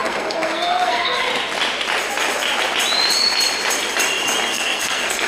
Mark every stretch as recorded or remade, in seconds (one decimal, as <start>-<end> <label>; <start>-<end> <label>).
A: 0.0-1.3 remade; 1.3-4.5 recorded; 4.5-5.3 remade